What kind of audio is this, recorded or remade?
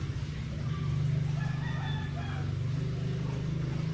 recorded